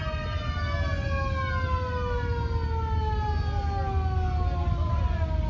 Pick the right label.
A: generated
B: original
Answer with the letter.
B